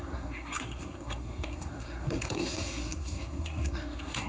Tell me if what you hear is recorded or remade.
remade